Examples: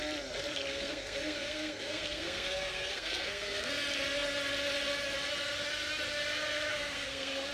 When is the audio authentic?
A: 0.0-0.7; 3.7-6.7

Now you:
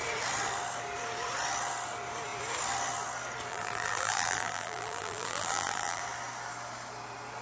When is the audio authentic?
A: 0.0-3.5; 6.0-7.4

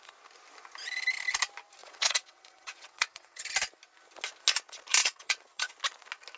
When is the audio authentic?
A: 0.0-1.8; 3.4-5.0; 5.7-6.4

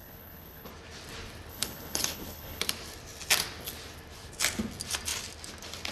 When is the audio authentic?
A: 0.7-1.5; 2.6-5.9

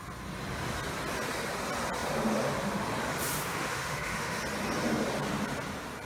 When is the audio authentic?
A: 0.0-3.5; 4.4-6.1

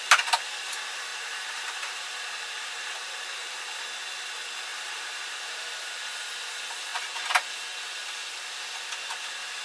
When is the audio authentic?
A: 0.0-1.1; 3.7-4.7; 6.3-9.6